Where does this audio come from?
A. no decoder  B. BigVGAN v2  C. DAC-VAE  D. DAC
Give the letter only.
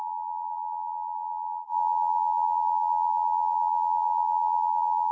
B